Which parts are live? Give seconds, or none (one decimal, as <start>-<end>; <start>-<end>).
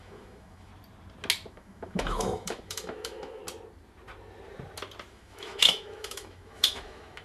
0.7-1.5; 3.4-5.1